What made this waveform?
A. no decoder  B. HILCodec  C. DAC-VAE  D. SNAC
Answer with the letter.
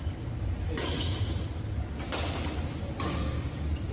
A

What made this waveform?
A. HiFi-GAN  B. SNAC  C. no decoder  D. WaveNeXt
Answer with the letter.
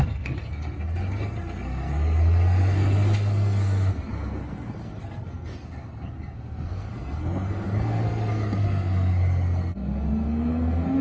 B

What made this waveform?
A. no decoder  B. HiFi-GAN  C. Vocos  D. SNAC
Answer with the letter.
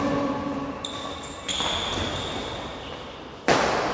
A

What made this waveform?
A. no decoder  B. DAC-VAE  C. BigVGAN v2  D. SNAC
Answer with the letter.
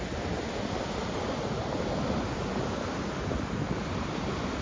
A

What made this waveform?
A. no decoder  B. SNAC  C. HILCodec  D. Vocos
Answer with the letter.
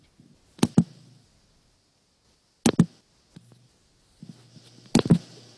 A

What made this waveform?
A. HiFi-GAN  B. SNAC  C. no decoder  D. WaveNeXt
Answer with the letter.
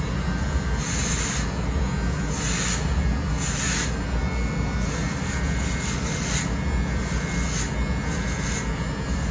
C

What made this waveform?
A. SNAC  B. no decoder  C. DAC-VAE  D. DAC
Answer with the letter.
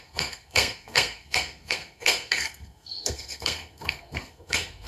A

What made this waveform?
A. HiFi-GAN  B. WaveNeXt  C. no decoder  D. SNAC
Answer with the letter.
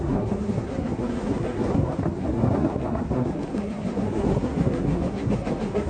D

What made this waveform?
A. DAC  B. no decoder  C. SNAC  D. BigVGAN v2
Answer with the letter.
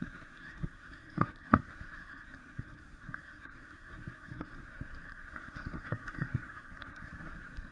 C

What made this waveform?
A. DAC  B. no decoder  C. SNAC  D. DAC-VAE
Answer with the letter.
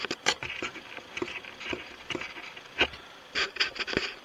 B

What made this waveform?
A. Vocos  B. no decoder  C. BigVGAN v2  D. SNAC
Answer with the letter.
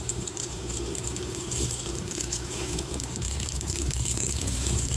D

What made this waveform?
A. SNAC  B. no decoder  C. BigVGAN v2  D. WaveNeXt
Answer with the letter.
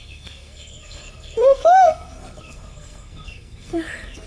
A